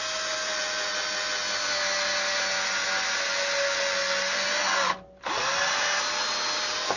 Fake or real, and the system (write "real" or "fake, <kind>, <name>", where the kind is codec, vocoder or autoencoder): real